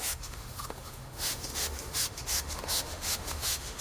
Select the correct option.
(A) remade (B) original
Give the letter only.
A